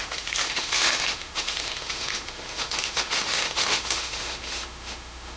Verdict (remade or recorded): remade